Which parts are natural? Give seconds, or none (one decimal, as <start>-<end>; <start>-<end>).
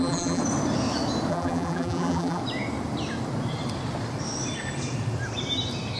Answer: 0.4-1.3; 2.4-6.0